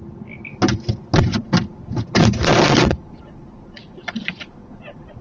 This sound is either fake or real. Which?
real